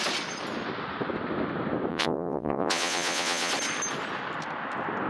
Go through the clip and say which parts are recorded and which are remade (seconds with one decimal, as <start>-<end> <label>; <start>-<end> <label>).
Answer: 0.0-1.9 recorded; 1.9-3.5 remade; 3.5-5.1 recorded